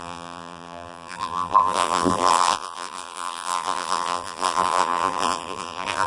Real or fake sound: fake